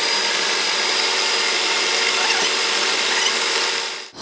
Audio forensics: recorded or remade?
remade